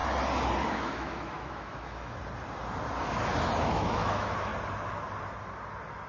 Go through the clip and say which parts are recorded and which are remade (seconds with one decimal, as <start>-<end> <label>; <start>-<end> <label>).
0.0-0.7 recorded; 0.7-2.2 remade; 2.2-3.6 recorded; 3.6-4.5 remade; 4.5-6.1 recorded